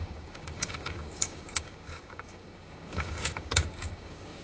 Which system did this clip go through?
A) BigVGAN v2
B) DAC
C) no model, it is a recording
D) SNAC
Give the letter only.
B